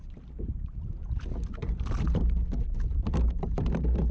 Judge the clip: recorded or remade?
recorded